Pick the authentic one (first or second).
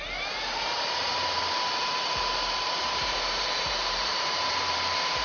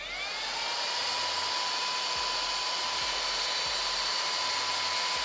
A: second